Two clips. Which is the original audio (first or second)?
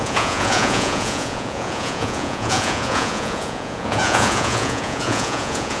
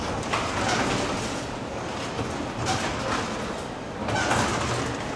second